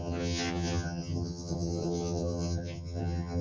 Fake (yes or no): yes